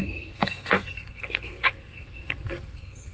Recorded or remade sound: remade